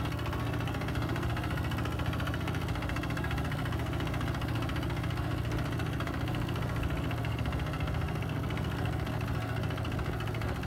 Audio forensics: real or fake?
fake